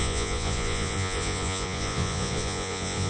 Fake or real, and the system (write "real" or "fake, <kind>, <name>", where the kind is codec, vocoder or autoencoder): fake, vocoder, Vocos